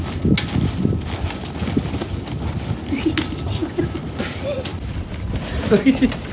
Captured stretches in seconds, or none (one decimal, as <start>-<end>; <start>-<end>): 0.0-4.7